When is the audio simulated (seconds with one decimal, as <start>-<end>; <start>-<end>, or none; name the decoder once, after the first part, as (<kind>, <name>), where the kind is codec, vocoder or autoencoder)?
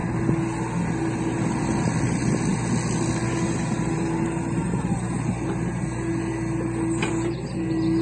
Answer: none